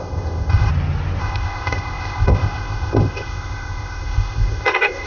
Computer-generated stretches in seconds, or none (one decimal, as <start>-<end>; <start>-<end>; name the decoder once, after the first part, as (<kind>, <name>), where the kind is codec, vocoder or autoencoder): 0.0-0.7 (codec, ZipCodec); 1.2-5.1